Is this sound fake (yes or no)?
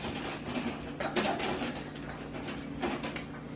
no